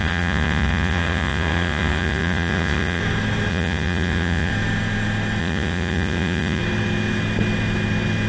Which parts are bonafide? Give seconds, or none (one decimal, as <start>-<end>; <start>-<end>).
3.0-3.5; 4.5-5.4; 6.6-8.3